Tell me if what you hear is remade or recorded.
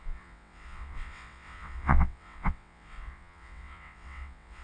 remade